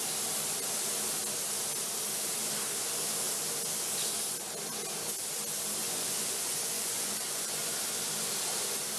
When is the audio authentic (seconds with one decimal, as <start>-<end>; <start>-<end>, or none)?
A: 0.0-5.8; 7.7-9.0